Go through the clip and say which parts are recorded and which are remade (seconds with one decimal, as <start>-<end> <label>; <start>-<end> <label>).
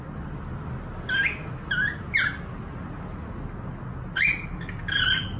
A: 0.0-5.4 recorded